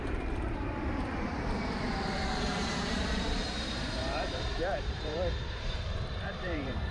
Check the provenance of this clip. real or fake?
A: fake